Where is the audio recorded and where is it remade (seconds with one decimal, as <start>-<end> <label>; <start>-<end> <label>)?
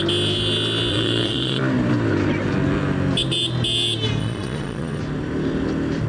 0.0-0.9 recorded; 0.9-1.6 remade; 1.6-4.2 recorded; 4.2-5.0 remade; 5.0-6.1 recorded